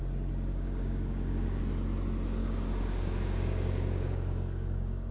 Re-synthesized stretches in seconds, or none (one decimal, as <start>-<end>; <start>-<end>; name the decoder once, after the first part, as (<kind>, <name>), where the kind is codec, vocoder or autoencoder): 0.5-1.6 (codec, DAC); 2.4-5.1